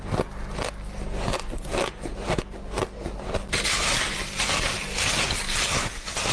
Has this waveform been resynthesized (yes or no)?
no